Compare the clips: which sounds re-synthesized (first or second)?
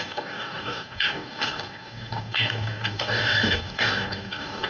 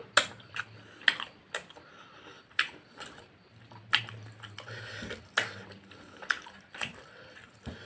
first